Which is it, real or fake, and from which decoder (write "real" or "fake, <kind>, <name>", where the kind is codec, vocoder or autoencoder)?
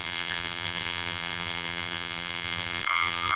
fake, vocoder, BigVGAN v2